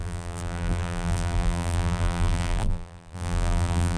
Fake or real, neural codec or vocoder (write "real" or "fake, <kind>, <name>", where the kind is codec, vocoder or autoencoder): fake, vocoder, BigVGAN v2